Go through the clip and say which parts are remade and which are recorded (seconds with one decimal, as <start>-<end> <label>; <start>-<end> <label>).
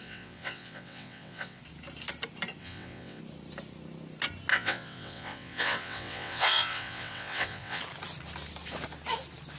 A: 0.0-1.6 remade; 1.6-2.6 recorded; 2.6-3.2 remade; 3.2-4.5 recorded; 4.5-7.8 remade; 7.8-9.6 recorded